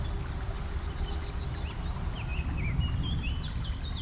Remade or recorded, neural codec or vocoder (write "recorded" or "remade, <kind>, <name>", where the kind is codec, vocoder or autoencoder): recorded